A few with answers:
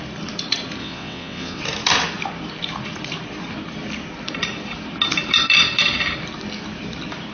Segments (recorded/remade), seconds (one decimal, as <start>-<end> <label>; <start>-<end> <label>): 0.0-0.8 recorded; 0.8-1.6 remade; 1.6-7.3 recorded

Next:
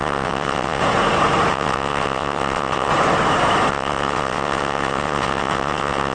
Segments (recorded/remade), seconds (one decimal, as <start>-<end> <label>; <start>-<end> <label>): 0.0-0.8 remade; 0.8-1.5 recorded; 1.5-2.9 remade; 2.9-3.7 recorded; 3.7-6.1 remade

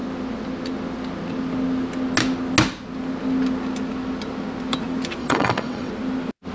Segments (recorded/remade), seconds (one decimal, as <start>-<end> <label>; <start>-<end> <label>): 0.0-5.2 recorded; 5.2-5.9 remade; 5.9-6.5 recorded